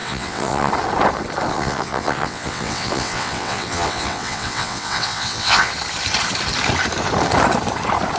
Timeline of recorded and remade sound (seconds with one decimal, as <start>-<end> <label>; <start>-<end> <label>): 0.0-0.7 remade; 0.7-1.5 recorded; 1.5-5.7 remade; 5.7-8.2 recorded